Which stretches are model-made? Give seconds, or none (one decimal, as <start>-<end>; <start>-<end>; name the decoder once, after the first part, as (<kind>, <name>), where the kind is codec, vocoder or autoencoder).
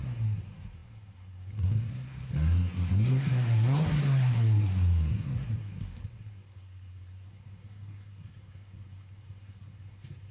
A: 0.0-10.3 (codec, SNAC)